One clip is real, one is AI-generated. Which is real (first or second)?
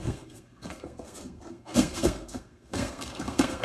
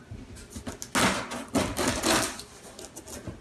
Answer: second